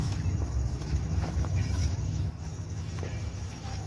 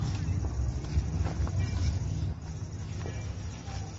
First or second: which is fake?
first